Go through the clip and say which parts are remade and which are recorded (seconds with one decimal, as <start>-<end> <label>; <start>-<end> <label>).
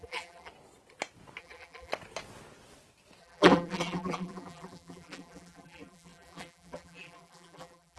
0.0-0.5 remade; 0.5-1.4 recorded; 1.4-1.9 remade; 1.9-3.2 recorded; 3.2-8.0 remade